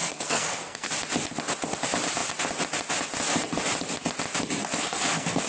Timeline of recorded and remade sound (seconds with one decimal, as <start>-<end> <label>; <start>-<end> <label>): 0.0-0.9 remade; 0.9-4.6 recorded; 4.6-5.5 remade